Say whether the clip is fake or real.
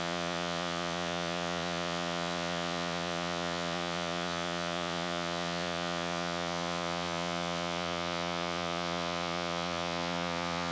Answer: fake